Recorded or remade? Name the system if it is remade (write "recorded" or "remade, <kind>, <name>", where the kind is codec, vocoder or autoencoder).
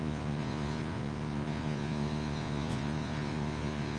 remade, vocoder, Vocos